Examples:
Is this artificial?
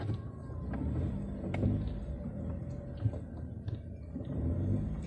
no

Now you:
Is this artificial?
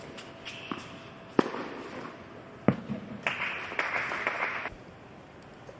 no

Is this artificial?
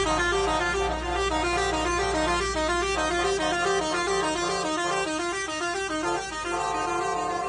no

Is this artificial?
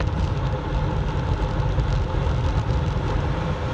no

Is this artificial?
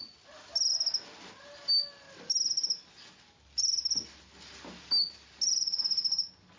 no